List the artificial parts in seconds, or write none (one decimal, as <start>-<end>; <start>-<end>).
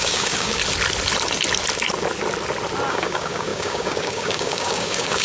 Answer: 0.0-0.6; 2.9-5.2